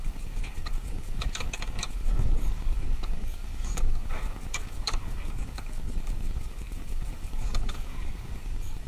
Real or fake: fake